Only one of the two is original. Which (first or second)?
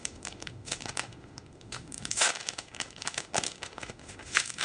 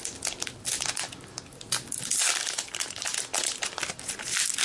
second